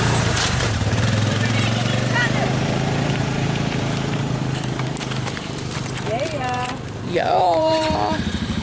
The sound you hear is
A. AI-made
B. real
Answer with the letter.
A